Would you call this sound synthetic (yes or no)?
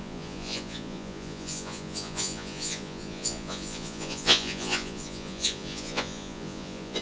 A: yes